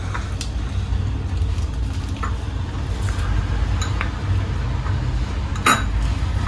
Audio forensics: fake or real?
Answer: real